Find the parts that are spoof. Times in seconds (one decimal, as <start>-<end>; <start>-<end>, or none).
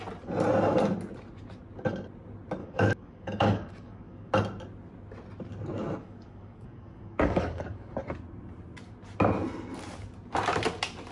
2.6-4.3; 6.0-7.9